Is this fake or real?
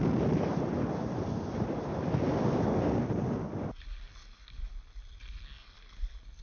real